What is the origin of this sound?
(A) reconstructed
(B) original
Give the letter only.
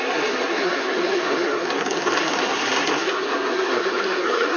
A